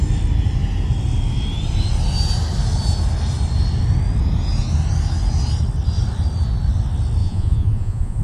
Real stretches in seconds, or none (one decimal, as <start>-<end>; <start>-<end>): 0.0-7.2

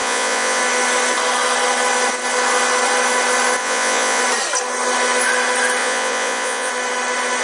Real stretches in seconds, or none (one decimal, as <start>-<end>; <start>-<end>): 0.6-3.6; 4.2-5.8; 6.7-7.4